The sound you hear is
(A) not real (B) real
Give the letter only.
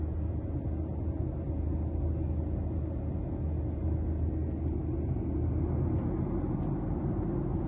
B